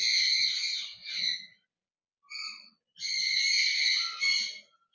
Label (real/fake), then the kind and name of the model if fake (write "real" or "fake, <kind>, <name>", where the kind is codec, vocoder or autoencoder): real